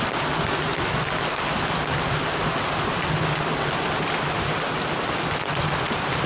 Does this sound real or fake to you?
real